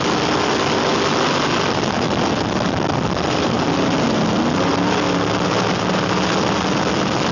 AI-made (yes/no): no